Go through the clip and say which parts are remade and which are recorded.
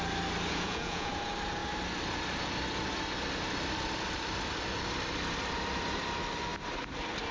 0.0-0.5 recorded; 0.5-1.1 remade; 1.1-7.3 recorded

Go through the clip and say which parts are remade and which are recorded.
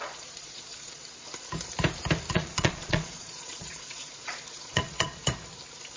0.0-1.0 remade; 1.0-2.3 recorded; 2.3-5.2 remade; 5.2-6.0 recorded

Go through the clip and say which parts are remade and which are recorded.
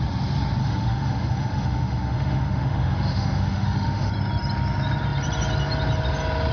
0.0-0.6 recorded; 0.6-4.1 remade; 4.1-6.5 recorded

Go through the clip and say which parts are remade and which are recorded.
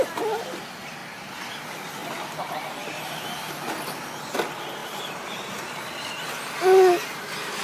0.0-2.0 recorded; 2.0-3.8 remade; 3.8-4.8 recorded; 4.8-5.4 remade; 5.4-7.6 recorded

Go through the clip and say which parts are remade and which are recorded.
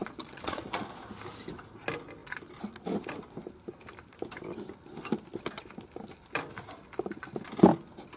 0.0-1.0 remade; 1.0-8.2 recorded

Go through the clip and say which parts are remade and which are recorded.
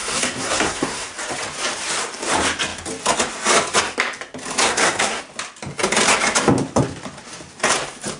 0.0-1.1 remade; 1.1-4.6 recorded; 4.6-5.2 remade; 5.2-8.2 recorded